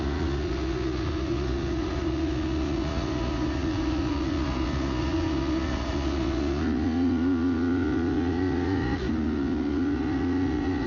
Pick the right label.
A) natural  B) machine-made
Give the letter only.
B